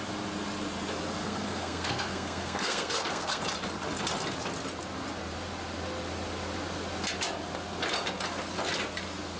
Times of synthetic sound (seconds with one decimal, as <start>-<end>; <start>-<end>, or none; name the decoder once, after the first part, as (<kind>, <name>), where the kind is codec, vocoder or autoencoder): 1.2-3.4 (codec, SNAC)